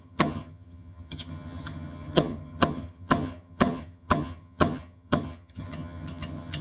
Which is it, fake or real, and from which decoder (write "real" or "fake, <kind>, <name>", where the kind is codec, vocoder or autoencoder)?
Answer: fake, vocoder, HiFi-GAN